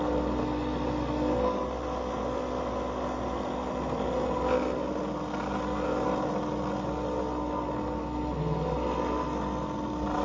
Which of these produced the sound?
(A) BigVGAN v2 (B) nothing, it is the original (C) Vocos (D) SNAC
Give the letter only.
B